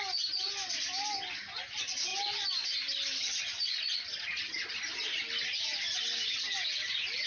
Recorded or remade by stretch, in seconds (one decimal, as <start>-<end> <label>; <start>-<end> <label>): 0.0-7.3 recorded